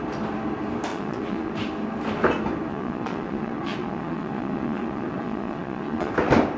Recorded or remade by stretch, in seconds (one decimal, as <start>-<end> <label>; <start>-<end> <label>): 0.0-0.9 recorded; 0.9-1.5 remade; 1.5-2.7 recorded; 2.7-6.1 remade; 6.1-6.6 recorded